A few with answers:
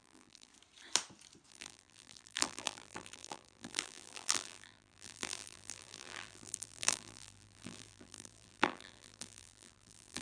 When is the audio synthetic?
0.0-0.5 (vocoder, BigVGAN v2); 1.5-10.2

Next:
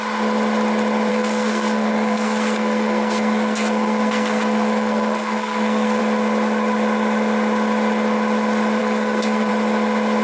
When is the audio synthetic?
1.1-6.0 (codec, SNAC); 8.8-9.5

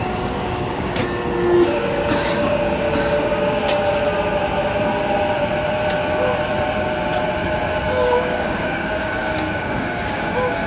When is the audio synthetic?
0.0-1.0 (codec, DAC); 1.7-4.0; 7.9-10.7

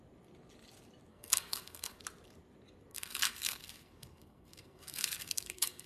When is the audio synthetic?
1.1-2.0 (codec, SNAC); 2.9-5.9

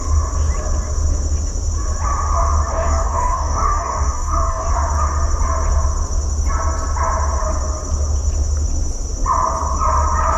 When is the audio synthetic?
2.7-4.7 (codec, DAC)

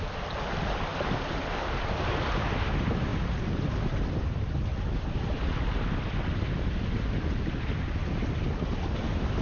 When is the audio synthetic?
3.1-4.1 (vocoder, BigVGAN v2)

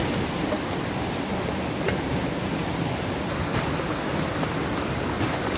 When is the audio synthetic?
none

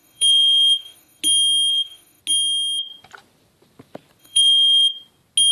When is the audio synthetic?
0.0-1.2 (autoencoder, DAC-VAE); 1.7-2.2; 4.2-4.9